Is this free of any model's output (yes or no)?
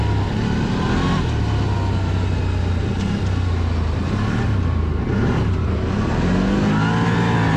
yes